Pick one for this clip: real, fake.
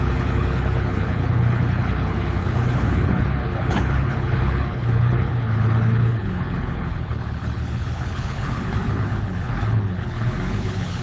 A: fake